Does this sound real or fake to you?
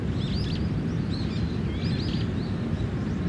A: real